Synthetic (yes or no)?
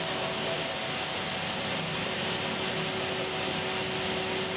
no